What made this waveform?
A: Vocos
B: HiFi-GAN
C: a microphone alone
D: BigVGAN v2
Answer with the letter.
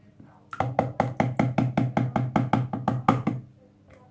C